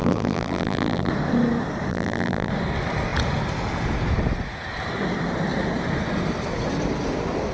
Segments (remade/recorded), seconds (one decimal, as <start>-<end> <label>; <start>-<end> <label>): 0.0-1.1 remade; 1.1-1.9 recorded; 1.9-2.5 remade; 2.5-7.5 recorded